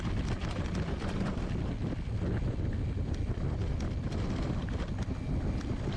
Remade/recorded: remade